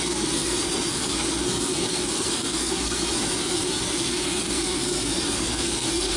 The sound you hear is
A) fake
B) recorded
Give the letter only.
A